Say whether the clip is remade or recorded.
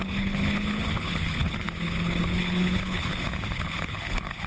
remade